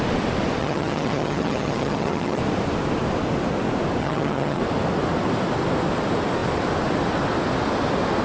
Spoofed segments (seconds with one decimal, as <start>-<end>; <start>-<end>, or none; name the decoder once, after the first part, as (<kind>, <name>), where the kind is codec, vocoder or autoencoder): 0.6-2.4 (vocoder, HiFi-GAN); 4.0-4.6